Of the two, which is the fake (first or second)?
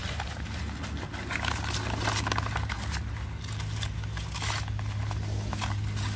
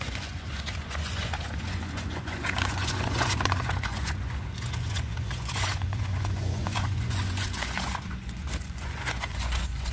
second